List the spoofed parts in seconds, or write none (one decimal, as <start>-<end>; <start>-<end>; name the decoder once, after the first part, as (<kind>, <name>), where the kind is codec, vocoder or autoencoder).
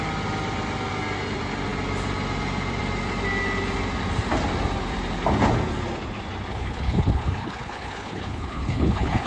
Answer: 6.5-9.3 (codec, HILCodec)